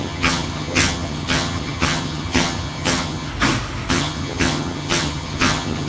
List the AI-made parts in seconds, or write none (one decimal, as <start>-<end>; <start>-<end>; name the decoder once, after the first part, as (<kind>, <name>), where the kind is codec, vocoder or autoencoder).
0.0-3.3 (vocoder, HiFi-GAN); 3.9-5.9